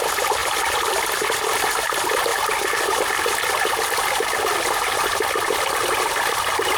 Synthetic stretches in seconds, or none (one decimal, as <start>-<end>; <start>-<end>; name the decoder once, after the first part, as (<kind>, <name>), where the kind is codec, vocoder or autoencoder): none